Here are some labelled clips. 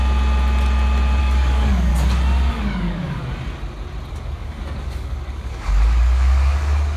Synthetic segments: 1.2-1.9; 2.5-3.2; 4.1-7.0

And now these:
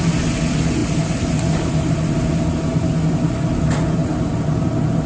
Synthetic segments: none

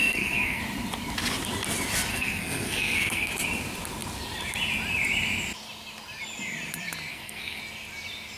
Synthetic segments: 0.0-0.6; 2.1-3.3; 7.1-7.6

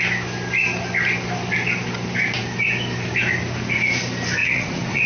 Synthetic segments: 4.4-5.1

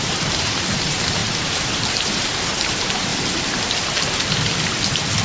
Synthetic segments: 0.0-3.1